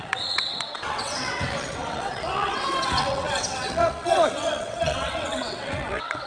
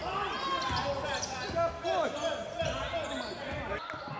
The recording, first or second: second